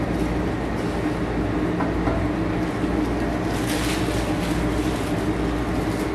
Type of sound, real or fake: real